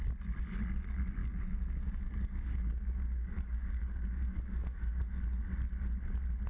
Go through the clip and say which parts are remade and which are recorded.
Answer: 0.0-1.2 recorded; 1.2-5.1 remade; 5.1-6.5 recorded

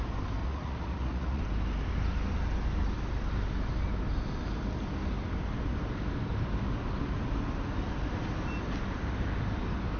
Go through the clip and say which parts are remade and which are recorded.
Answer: 0.0-0.4 recorded; 0.4-1.4 remade; 1.4-10.0 recorded

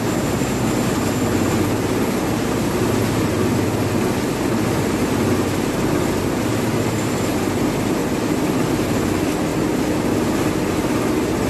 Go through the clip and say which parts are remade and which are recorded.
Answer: 0.0-11.5 recorded

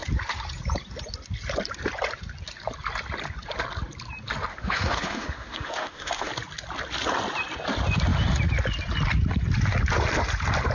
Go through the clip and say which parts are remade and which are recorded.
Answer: 0.0-4.5 recorded; 4.5-6.3 remade; 6.3-10.7 recorded

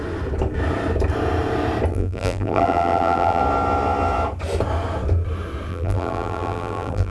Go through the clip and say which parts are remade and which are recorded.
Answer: 0.0-1.9 recorded; 1.9-3.4 remade; 3.4-5.7 recorded; 5.7-7.1 remade

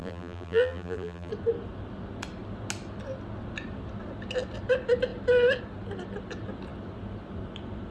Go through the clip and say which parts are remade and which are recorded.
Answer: 0.0-1.3 remade; 1.3-7.9 recorded

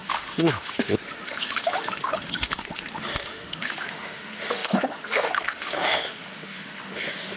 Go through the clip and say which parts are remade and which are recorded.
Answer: 0.0-7.4 remade

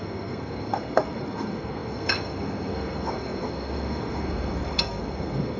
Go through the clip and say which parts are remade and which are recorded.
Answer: 0.0-5.6 remade